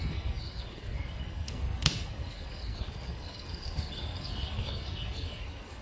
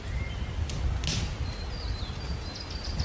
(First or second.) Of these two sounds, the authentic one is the second